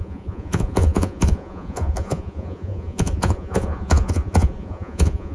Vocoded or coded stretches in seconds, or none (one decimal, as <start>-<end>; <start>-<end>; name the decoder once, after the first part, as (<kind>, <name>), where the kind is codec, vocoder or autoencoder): 0.0-5.3 (vocoder, Vocos)